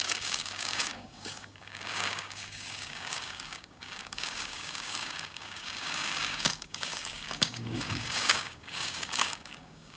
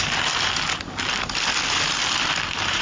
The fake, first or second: first